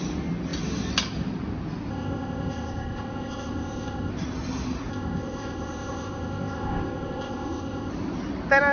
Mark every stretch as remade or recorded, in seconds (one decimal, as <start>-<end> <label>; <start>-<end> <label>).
0.0-1.9 recorded; 1.9-4.1 remade; 4.1-4.9 recorded; 4.9-7.9 remade; 7.9-8.7 recorded